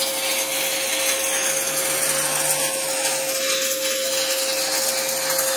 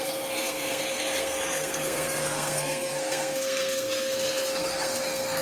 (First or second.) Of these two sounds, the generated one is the second